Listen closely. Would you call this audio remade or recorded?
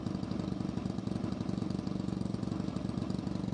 recorded